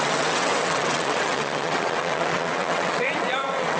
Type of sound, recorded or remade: remade